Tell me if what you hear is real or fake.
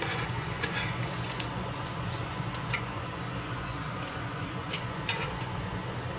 fake